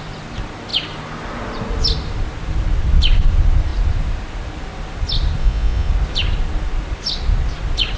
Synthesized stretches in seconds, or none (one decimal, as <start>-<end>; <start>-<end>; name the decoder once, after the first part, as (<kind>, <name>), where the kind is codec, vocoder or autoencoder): 5.4-5.9 (vocoder, Vocos)